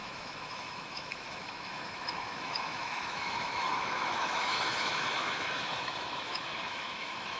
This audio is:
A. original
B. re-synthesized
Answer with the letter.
B